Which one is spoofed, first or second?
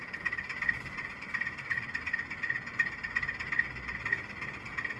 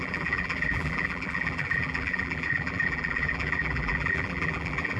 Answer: second